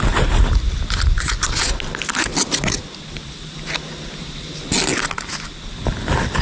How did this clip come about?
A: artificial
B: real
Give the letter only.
B